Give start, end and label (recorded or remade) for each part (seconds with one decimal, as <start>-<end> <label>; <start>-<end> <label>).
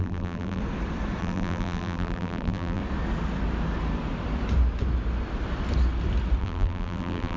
0.0-0.6 remade; 0.6-1.2 recorded; 1.2-2.8 remade; 2.8-6.4 recorded; 6.4-7.4 remade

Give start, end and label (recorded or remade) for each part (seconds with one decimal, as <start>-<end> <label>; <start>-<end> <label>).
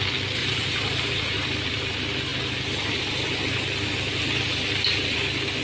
0.0-0.4 recorded; 0.4-1.9 remade; 1.9-5.6 recorded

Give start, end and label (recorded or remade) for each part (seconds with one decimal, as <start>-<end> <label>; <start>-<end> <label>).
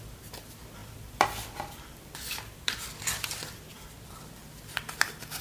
0.0-0.8 recorded; 0.8-3.4 remade; 3.4-5.4 recorded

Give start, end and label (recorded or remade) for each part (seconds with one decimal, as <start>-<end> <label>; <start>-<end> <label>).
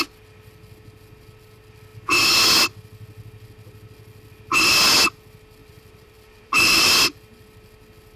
0.0-5.6 recorded; 5.6-6.9 remade; 6.9-8.2 recorded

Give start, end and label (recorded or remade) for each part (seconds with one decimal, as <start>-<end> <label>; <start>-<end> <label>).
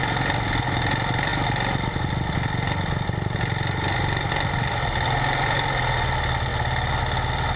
0.0-7.6 recorded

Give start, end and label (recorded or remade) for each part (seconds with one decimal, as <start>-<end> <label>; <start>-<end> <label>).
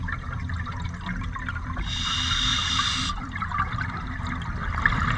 0.0-2.5 recorded; 2.5-4.2 remade; 4.2-5.2 recorded